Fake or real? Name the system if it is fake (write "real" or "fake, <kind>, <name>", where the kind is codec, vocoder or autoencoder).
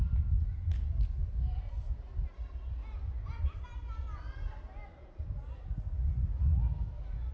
real